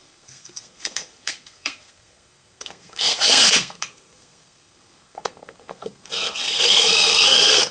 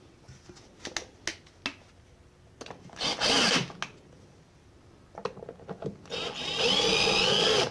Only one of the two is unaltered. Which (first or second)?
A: second